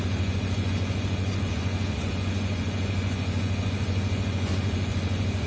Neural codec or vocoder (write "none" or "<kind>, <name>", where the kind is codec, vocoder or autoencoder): vocoder, Vocos